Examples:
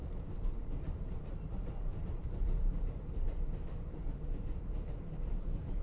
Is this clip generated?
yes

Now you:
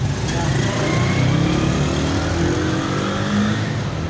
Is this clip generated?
no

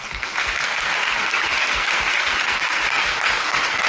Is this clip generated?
yes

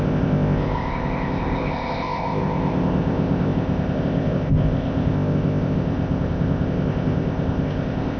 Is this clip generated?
yes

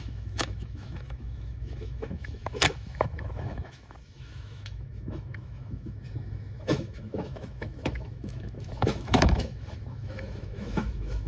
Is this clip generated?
yes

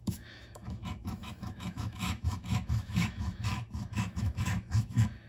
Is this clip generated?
yes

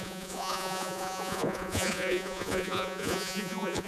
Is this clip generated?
yes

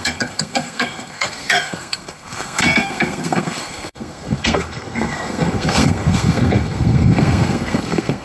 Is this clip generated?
yes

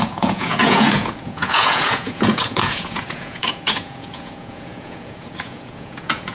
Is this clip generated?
yes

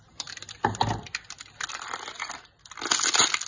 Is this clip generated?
no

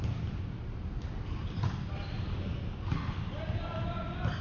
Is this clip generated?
no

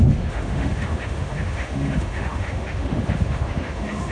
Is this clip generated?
yes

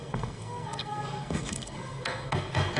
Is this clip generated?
yes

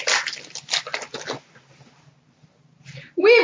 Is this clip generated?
no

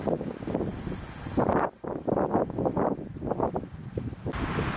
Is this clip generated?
no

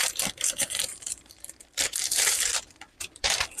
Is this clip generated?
yes